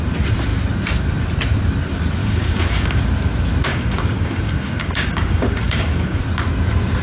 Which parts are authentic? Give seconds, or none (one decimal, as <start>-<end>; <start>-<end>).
0.0-2.2; 3.0-3.7; 6.2-7.0